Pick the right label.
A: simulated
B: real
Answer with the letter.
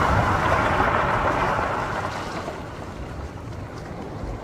B